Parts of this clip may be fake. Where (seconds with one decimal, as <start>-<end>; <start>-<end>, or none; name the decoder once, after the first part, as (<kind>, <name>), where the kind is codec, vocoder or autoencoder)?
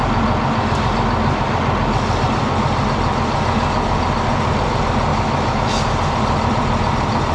5.1-5.8 (autoencoder, DAC-VAE)